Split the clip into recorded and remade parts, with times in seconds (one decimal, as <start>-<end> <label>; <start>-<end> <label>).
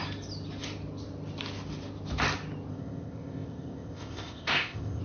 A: 0.0-2.7 recorded; 2.7-5.0 remade